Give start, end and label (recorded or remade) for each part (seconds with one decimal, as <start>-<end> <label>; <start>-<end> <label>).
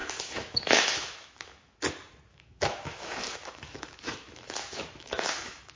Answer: 0.0-1.8 remade; 1.8-2.3 recorded; 2.3-5.8 remade